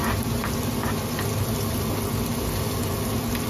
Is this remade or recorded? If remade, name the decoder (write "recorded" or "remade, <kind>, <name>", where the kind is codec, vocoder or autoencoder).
recorded